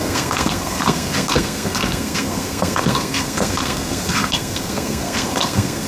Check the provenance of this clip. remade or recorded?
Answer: remade